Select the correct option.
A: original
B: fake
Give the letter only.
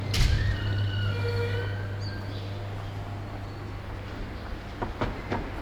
A